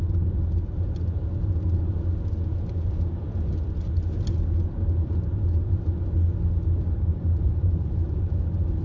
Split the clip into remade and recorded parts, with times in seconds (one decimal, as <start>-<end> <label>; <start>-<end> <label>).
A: 0.0-7.1 recorded; 7.1-8.4 remade; 8.4-8.8 recorded